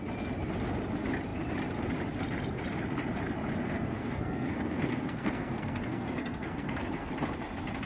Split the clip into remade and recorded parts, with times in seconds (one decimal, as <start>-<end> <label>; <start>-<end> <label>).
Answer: 0.0-3.6 recorded; 3.6-7.1 remade; 7.1-7.9 recorded